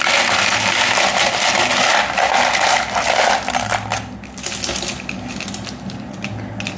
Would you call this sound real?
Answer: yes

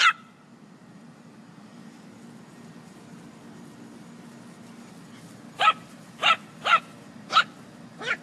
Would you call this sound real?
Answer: yes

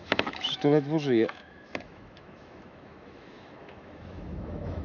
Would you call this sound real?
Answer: no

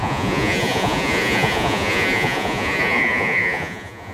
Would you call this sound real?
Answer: no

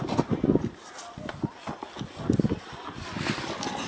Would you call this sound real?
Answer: yes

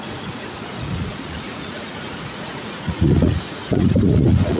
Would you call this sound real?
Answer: no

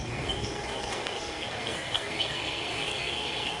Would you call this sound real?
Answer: no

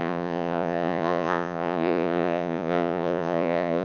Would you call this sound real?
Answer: no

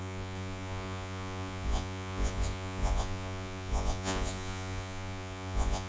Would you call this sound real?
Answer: no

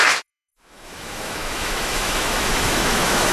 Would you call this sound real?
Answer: no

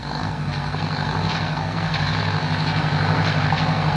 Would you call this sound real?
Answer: no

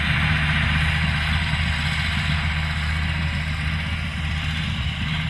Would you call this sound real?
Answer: yes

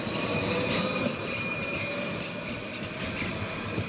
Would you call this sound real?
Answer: yes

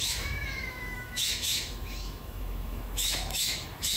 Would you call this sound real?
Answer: no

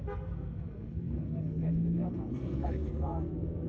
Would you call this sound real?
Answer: no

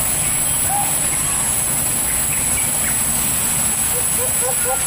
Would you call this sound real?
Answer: yes